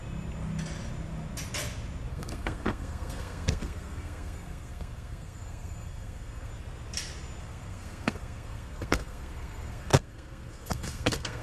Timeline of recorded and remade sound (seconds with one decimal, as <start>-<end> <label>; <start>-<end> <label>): 0.0-2.1 recorded; 2.1-6.5 remade; 6.5-7.4 recorded; 7.4-11.4 remade